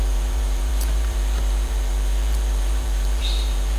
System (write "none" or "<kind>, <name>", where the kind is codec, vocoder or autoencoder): vocoder, BigVGAN v2